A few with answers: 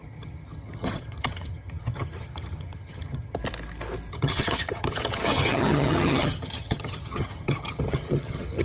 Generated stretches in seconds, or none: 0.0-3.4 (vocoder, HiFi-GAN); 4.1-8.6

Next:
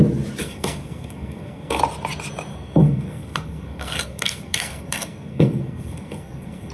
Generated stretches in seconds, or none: 0.4-1.8 (codec, SNAC); 2.5-6.7

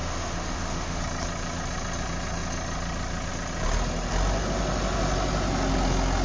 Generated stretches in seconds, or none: 0.0-1.0 (autoencoder, DAC-VAE)

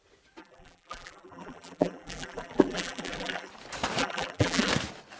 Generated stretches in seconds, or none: 0.4-3.5 (vocoder, BigVGAN v2); 4.0-4.7